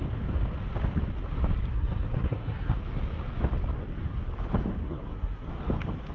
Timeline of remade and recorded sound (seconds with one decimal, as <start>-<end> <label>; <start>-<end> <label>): 0.0-1.7 recorded; 1.7-2.8 remade; 2.8-4.8 recorded; 4.8-5.5 remade; 5.5-6.1 recorded